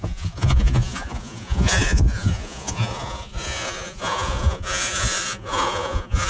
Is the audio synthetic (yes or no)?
yes